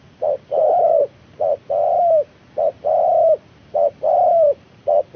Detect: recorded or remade recorded